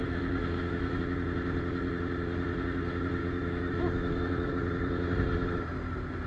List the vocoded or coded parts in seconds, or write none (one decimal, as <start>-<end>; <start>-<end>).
0.0-1.0; 3.2-4.5